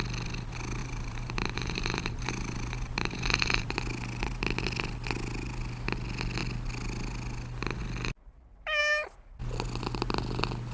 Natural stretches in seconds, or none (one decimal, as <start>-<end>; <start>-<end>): 0.0-0.8; 3.7-10.7